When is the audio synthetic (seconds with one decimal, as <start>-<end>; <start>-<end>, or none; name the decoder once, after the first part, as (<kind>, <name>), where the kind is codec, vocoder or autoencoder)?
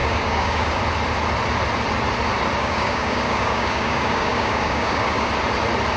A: 0.0-0.8 (codec, DAC); 2.6-5.3